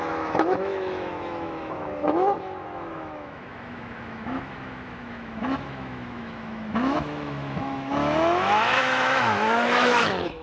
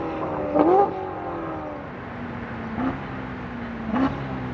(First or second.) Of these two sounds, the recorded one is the second